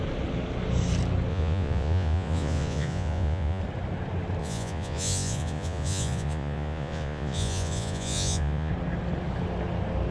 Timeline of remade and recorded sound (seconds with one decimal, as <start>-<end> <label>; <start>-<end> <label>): 0.0-1.3 recorded; 1.3-3.6 remade; 3.6-4.4 recorded; 4.4-8.7 remade; 8.7-10.1 recorded